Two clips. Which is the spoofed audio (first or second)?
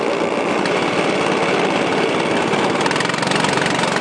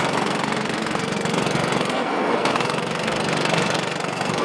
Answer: second